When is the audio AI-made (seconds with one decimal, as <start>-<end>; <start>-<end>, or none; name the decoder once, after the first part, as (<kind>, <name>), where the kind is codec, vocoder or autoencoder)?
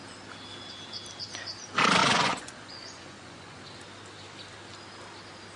2.0-3.6 (vocoder, Vocos)